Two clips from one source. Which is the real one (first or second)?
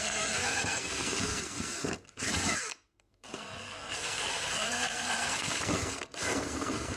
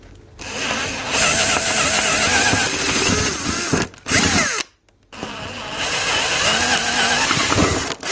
second